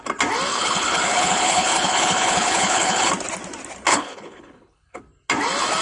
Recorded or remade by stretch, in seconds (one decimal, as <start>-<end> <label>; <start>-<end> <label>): 0.0-0.5 recorded; 0.5-3.1 remade; 3.1-3.9 recorded; 3.9-5.0 remade; 5.0-5.8 recorded